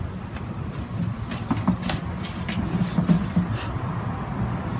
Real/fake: fake